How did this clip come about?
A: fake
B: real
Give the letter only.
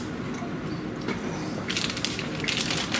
B